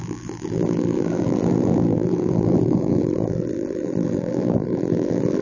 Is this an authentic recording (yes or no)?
no